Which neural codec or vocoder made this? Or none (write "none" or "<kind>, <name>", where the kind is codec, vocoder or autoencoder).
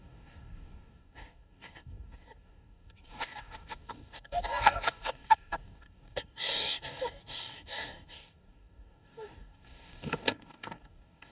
codec, DAC